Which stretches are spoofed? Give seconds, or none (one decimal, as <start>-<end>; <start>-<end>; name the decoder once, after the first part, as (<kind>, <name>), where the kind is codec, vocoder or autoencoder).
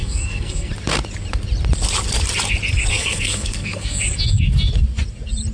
0.0-0.7 (codec, SNAC); 2.9-4.0